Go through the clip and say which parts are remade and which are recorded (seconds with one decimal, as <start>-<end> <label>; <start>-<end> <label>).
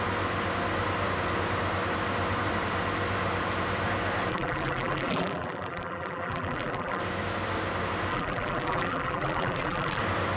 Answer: 0.0-4.3 recorded; 4.3-7.0 remade; 7.0-8.1 recorded; 8.1-10.0 remade; 10.0-10.4 recorded